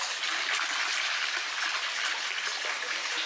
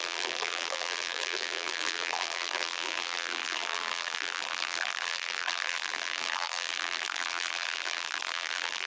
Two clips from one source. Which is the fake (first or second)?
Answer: second